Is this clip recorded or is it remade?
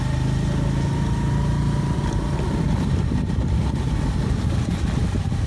recorded